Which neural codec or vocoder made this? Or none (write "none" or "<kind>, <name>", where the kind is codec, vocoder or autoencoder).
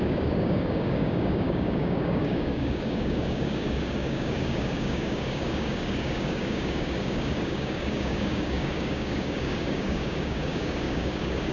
codec, DAC